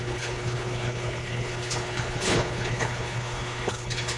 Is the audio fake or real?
fake